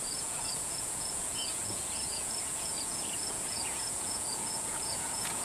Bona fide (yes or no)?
no